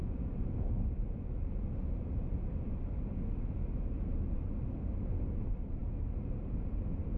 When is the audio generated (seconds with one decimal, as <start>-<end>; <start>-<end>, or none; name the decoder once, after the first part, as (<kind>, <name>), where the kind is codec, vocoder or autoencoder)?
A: 1.8-2.5 (vocoder, BigVGAN v2); 5.8-7.2